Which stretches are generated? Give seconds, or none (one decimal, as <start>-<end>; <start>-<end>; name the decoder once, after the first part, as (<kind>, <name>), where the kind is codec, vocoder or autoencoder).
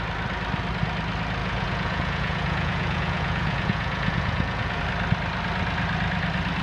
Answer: 1.4-4.8 (vocoder, Vocos)